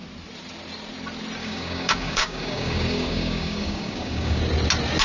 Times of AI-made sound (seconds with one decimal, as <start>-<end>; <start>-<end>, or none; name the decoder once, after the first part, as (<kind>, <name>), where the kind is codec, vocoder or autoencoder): 1.4-4.4 (codec, DAC)